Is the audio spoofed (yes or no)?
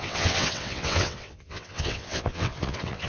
yes